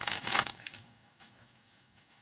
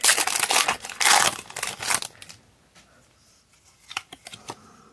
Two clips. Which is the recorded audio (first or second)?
second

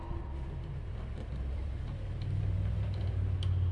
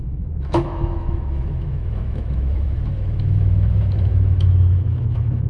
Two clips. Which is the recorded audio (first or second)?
first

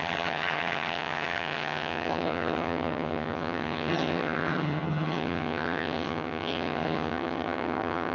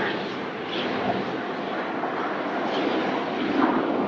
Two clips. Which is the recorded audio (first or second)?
second